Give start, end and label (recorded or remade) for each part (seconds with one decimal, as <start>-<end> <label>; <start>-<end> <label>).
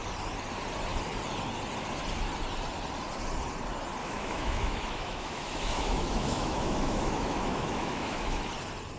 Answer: 0.0-4.0 recorded; 4.0-8.4 remade; 8.4-9.0 recorded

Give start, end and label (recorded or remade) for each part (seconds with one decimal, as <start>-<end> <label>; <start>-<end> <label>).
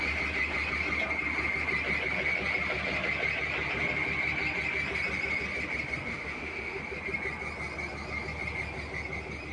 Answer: 0.0-6.1 recorded; 6.1-6.8 remade; 6.8-9.5 recorded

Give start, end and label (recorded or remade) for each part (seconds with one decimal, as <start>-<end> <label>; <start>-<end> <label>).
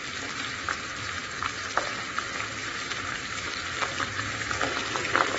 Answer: 0.0-2.6 recorded; 2.6-3.5 remade; 3.5-5.4 recorded